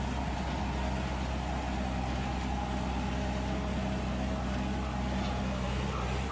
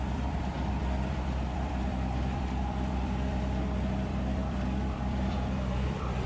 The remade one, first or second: second